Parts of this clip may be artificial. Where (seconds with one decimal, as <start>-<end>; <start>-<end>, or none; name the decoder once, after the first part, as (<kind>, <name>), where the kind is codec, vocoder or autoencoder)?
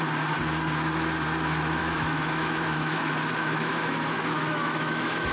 1.8-5.3 (autoencoder, DAC-VAE)